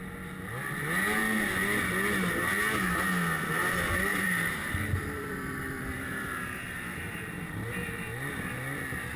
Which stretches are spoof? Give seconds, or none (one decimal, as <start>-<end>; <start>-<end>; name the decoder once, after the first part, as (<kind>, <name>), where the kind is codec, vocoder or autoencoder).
4.1-8.1 (vocoder, BigVGAN v2)